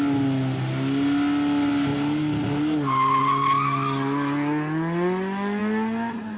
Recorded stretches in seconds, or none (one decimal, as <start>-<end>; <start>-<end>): 0.0-6.4